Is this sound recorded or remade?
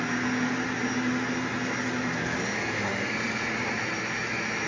recorded